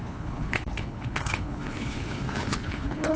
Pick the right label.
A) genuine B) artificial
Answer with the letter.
B